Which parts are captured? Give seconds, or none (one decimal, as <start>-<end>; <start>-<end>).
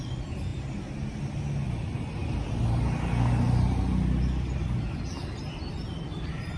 0.0-6.6